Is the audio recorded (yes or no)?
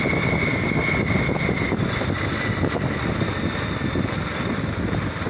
yes